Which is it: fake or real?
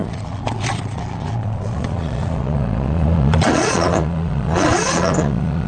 fake